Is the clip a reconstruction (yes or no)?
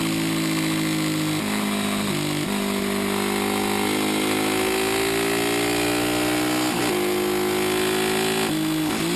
no